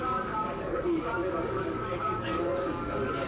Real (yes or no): no